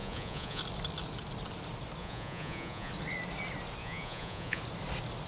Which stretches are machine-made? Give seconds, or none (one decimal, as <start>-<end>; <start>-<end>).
0.0-0.6; 2.0-2.9; 3.8-4.6

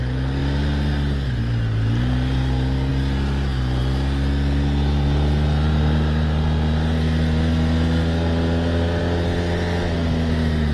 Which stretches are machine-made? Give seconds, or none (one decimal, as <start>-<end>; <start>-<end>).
none

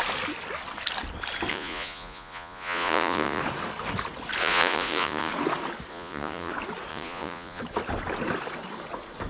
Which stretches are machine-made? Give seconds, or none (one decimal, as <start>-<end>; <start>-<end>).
1.5-3.4; 4.4-5.3; 5.9-6.5; 6.9-7.6

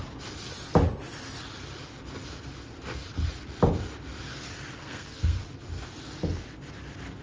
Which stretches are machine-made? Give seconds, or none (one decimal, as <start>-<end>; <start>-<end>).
4.8-5.4

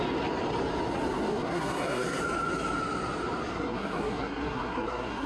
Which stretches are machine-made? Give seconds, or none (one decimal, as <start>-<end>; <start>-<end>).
1.3-2.2; 3.5-5.3